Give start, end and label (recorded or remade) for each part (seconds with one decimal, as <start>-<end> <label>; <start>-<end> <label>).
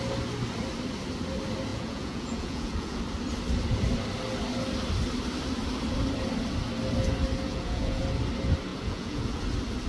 0.0-1.7 recorded; 1.7-3.0 remade; 3.0-7.5 recorded; 7.5-8.0 remade; 8.0-8.7 recorded; 8.7-9.4 remade; 9.4-9.9 recorded